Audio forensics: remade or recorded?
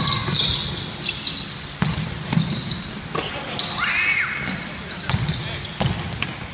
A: recorded